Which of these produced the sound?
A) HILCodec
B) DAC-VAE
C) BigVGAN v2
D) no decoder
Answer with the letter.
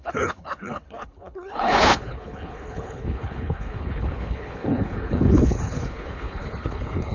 A